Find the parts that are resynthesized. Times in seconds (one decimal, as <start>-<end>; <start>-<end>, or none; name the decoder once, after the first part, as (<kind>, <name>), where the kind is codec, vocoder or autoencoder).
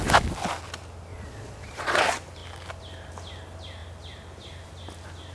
1.1-2.0 (vocoder, Vocos)